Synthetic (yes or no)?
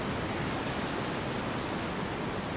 no